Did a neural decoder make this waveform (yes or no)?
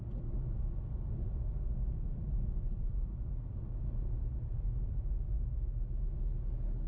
no